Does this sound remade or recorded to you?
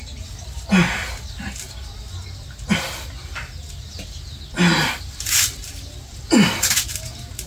recorded